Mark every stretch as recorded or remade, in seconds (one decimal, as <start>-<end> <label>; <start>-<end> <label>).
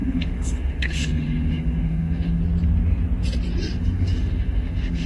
0.0-2.4 remade; 2.4-3.7 recorded; 3.7-5.1 remade